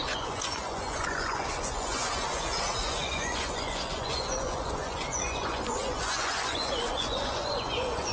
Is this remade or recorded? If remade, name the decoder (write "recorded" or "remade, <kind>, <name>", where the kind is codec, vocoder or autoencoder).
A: remade, vocoder, Vocos